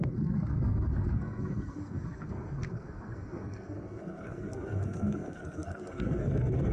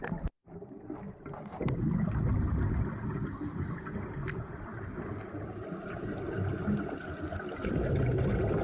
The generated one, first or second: first